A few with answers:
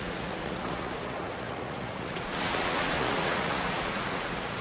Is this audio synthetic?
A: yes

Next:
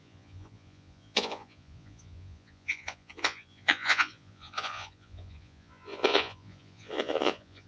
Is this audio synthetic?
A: yes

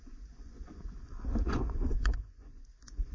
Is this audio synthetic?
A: yes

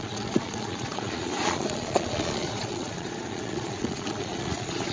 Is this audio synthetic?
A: yes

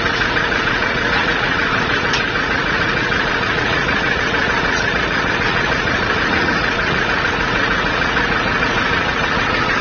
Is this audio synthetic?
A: yes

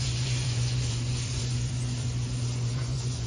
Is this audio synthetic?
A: yes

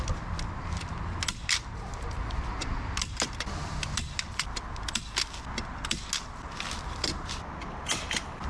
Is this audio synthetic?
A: no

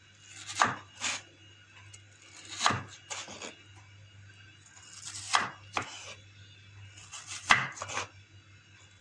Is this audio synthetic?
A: no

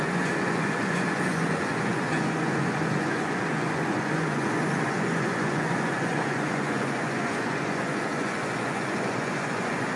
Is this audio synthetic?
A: yes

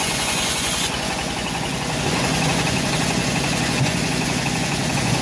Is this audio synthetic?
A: yes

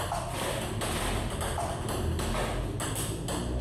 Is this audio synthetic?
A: no